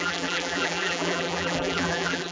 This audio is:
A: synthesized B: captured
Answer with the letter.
A